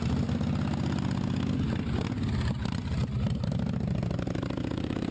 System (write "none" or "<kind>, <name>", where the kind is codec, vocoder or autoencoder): none